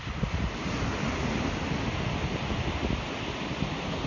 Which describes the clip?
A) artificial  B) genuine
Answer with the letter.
B